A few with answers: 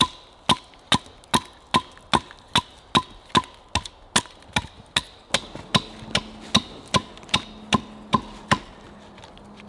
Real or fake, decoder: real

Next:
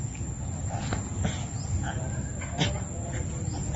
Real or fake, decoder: real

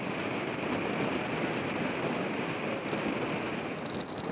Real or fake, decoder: real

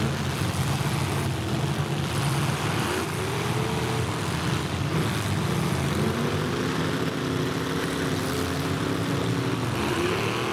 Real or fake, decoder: real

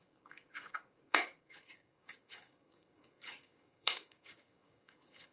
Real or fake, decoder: fake, codec, DAC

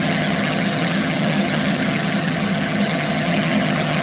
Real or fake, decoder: fake, vocoder, HiFi-GAN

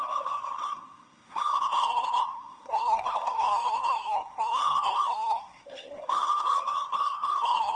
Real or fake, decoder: fake, codec, SNAC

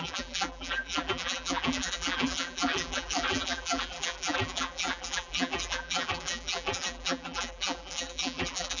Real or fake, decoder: fake, vocoder, BigVGAN v2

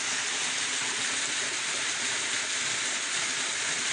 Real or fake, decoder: real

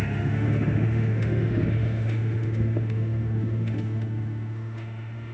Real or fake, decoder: fake, autoencoder, DAC-VAE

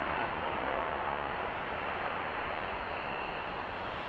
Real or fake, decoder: fake, vocoder, Vocos